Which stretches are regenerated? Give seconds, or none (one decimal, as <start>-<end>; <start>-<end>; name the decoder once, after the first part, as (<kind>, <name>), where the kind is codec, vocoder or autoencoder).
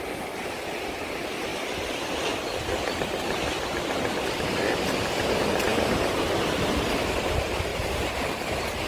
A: 5.7-6.2 (vocoder, BigVGAN v2); 7.7-8.5